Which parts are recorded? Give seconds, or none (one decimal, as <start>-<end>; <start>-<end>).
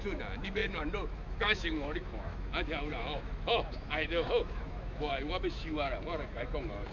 none